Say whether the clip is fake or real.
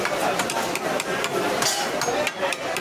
real